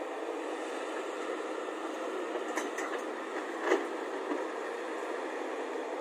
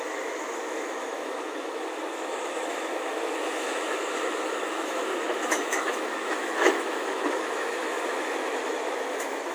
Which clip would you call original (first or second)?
first